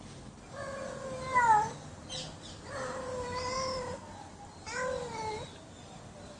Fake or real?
real